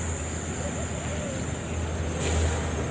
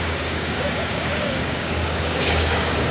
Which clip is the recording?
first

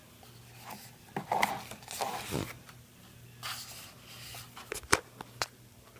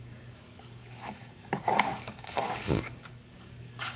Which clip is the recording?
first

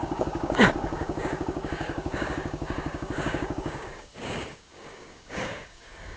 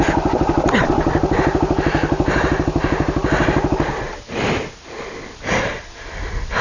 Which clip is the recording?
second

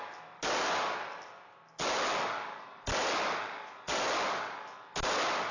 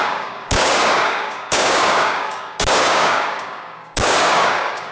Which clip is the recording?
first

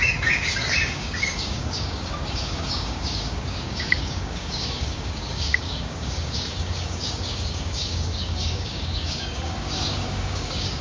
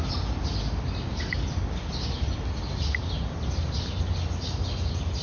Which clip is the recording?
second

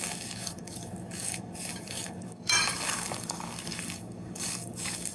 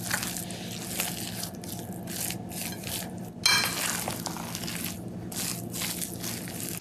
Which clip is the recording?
second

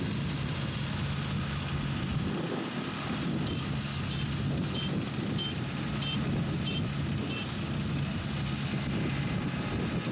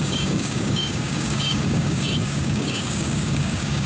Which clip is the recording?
first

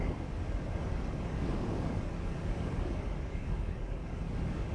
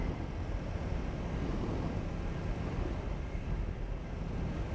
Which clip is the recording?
second